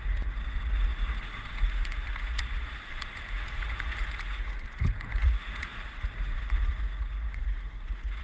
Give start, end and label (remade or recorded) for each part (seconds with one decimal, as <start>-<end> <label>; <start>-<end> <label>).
0.0-8.2 remade

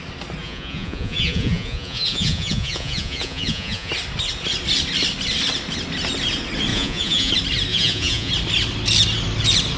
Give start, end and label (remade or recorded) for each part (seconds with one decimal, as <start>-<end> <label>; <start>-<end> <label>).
0.0-0.4 recorded; 0.4-3.9 remade; 3.9-6.7 recorded; 6.7-7.3 remade; 7.3-7.7 recorded; 7.7-8.3 remade; 8.3-9.8 recorded